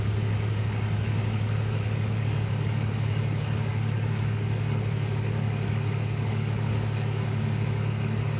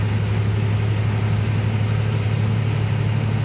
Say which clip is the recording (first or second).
second